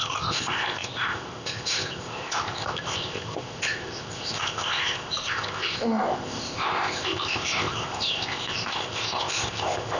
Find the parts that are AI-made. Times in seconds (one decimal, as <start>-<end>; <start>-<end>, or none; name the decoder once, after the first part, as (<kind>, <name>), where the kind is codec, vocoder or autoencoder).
0.0-10.0 (codec, ZipCodec)